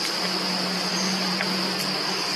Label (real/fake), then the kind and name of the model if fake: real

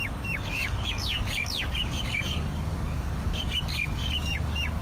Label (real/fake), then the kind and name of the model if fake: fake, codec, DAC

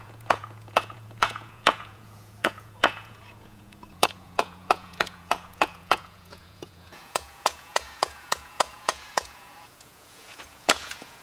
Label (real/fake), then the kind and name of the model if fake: fake, vocoder, Vocos